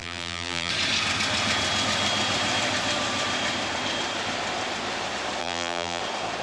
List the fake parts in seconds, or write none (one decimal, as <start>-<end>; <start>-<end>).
0.0-0.7; 5.4-6.0